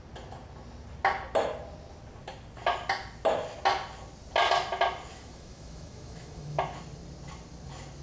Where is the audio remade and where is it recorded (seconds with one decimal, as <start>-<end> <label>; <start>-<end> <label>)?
0.0-5.1 recorded; 5.1-6.6 remade; 6.6-8.0 recorded

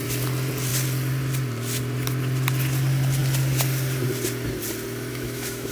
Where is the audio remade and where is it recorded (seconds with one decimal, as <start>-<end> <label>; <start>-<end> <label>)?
0.0-5.1 recorded; 5.1-5.7 remade

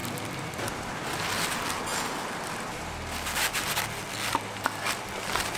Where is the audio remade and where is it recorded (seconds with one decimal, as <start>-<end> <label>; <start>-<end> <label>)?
0.0-5.6 recorded

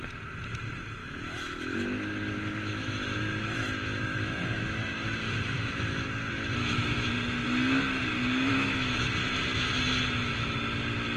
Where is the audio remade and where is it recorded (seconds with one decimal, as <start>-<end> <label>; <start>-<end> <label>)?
0.0-1.0 recorded; 1.0-5.7 remade; 5.7-6.6 recorded; 6.6-7.1 remade; 7.1-8.5 recorded; 8.5-9.1 remade; 9.1-11.2 recorded

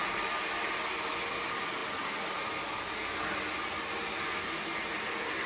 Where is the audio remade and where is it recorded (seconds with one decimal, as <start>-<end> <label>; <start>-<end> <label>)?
0.0-5.5 recorded

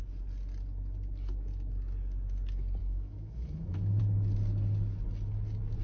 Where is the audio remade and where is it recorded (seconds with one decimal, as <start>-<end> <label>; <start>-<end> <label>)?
0.0-2.8 recorded; 2.8-4.0 remade; 4.0-5.8 recorded

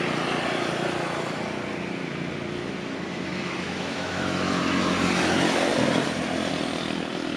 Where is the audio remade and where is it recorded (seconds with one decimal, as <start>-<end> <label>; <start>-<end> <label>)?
0.0-3.3 recorded; 3.3-4.6 remade; 4.6-7.4 recorded